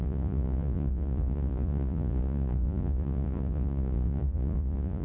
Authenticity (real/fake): fake